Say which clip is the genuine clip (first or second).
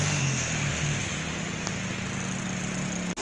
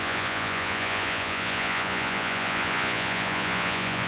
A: first